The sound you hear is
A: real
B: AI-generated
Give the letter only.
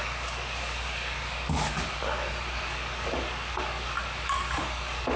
B